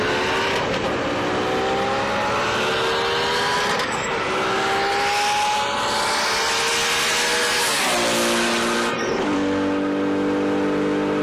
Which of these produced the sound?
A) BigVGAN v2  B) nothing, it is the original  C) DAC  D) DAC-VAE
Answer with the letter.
B